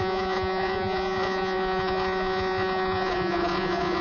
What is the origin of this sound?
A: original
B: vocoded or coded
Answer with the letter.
B